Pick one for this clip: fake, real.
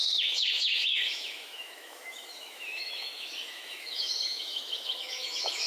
fake